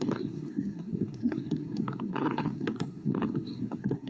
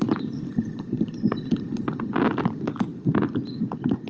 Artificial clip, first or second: first